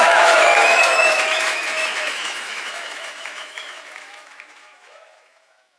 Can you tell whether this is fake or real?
fake